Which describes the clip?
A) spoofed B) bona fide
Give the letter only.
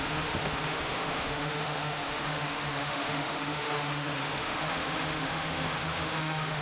A